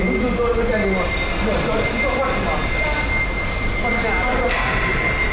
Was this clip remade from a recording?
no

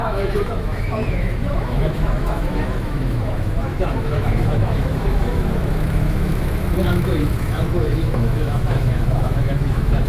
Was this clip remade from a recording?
yes